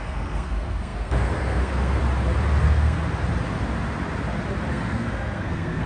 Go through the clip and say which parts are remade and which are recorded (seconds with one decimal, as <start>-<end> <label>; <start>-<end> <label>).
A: 0.0-2.0 remade; 2.0-2.6 recorded; 2.6-3.0 remade; 3.0-4.7 recorded; 4.7-5.9 remade